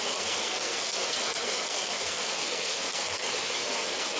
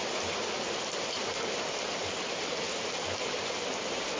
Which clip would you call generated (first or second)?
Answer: first